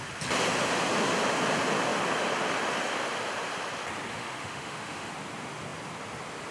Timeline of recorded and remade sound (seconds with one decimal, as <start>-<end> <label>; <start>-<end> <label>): 0.0-4.1 recorded; 4.1-5.1 remade; 5.1-6.5 recorded